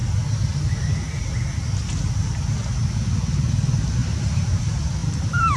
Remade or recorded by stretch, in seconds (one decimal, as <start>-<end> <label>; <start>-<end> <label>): 0.0-4.0 recorded; 4.0-4.6 remade; 4.6-5.0 recorded; 5.0-5.6 remade